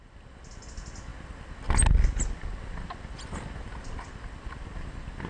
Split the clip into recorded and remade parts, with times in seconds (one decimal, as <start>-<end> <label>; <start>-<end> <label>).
0.0-5.3 recorded